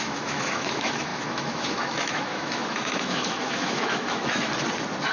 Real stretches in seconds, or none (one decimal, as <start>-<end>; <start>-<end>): 4.5-5.1